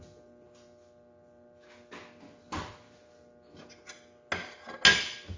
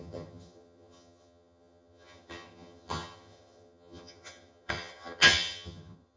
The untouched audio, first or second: first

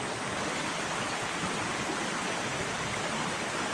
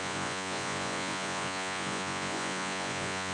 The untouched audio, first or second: first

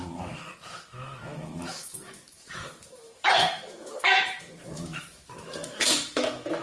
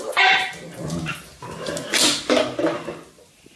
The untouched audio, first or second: second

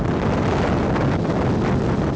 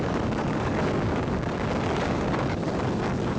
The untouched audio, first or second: first